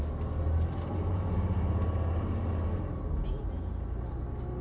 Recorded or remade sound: recorded